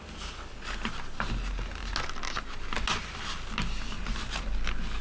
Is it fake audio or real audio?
real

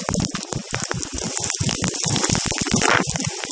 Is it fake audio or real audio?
fake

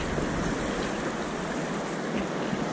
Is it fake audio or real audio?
real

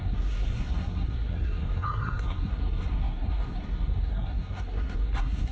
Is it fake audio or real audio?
fake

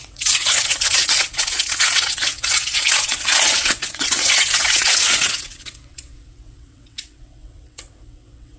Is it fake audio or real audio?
fake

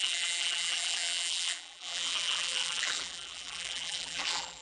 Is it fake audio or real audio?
fake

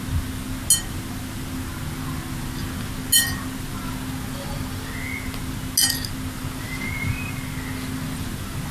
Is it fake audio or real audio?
real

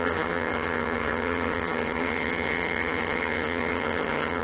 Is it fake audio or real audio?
fake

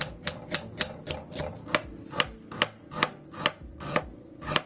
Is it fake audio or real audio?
real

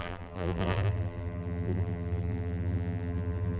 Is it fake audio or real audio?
fake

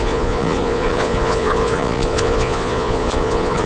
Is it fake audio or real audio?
fake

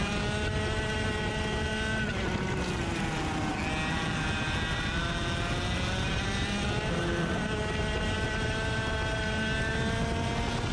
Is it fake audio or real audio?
real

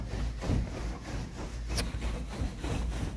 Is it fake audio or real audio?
real